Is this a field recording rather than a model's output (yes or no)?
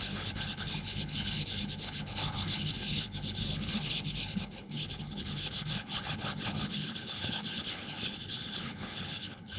no